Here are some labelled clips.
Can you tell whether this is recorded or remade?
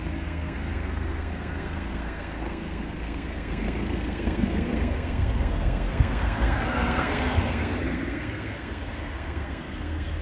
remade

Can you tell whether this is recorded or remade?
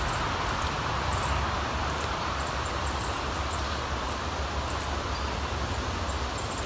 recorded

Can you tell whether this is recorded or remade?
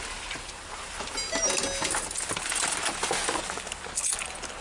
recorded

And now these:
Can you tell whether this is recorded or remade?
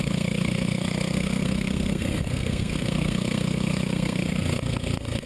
remade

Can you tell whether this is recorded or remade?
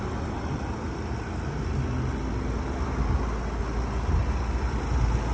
recorded